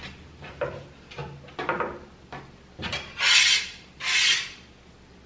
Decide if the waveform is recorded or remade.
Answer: recorded